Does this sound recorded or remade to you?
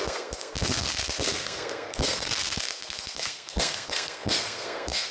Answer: remade